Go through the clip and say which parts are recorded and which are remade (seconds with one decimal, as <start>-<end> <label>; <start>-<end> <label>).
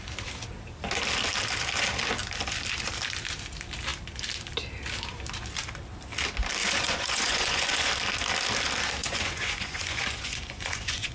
0.0-6.6 recorded; 6.6-7.9 remade; 7.9-9.0 recorded; 9.0-11.1 remade